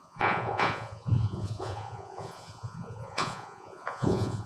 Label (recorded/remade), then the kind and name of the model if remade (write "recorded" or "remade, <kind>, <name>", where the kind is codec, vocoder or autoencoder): remade, vocoder, Vocos